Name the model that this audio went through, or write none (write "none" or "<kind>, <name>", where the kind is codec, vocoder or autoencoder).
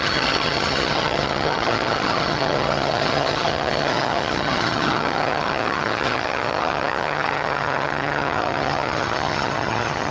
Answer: vocoder, HiFi-GAN